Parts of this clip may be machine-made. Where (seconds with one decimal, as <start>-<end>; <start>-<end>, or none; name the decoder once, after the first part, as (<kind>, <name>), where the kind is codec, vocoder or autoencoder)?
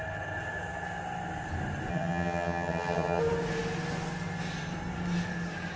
1.9-3.2 (vocoder, HiFi-GAN)